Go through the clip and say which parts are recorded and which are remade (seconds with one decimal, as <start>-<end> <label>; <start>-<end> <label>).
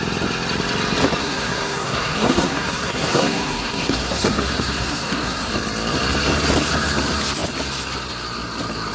0.0-1.2 recorded; 1.2-5.5 remade; 5.5-8.9 recorded